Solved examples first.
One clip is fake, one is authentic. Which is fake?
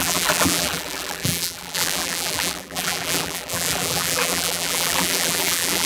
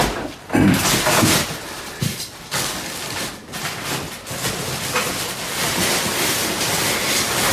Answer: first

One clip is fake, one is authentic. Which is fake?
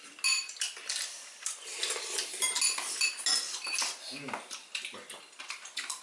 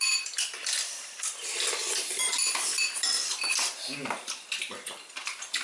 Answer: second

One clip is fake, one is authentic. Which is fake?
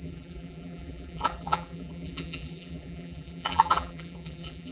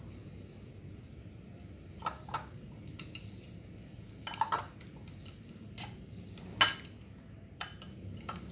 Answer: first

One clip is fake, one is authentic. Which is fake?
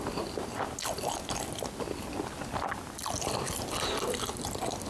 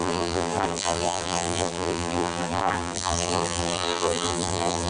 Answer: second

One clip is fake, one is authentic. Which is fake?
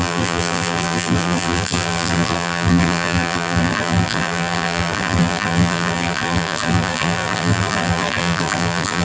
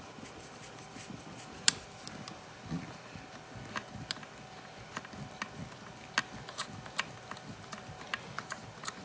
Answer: first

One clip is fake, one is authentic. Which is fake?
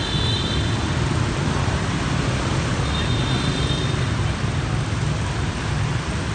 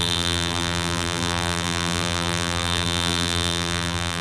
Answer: second